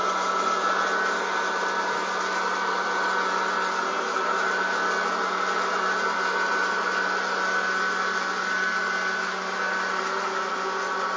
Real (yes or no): yes